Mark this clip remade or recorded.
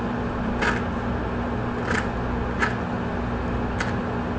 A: recorded